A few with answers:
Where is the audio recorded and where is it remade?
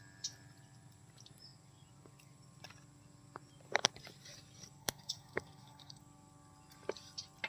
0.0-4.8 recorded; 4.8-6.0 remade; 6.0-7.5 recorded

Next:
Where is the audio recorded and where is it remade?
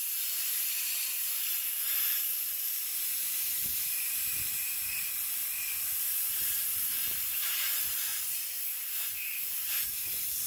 0.0-1.5 remade; 1.5-2.1 recorded; 2.1-3.6 remade; 3.6-4.2 recorded; 4.2-5.4 remade; 5.4-5.9 recorded; 5.9-8.1 remade; 8.1-9.9 recorded; 9.9-10.5 remade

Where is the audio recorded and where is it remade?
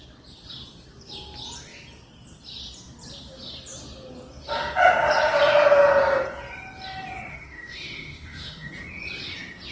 0.0-7.3 recorded; 7.3-8.7 remade; 8.7-9.7 recorded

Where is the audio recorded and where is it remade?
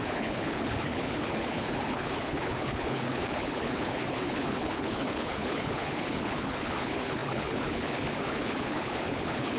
0.0-9.6 remade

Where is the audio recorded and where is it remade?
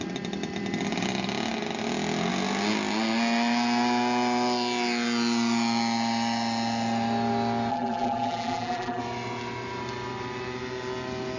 0.0-7.7 recorded; 7.7-9.0 remade; 9.0-11.4 recorded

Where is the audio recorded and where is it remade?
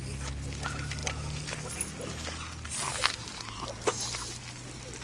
0.0-5.0 recorded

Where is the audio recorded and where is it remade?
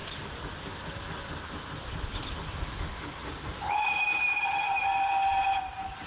0.0-6.1 recorded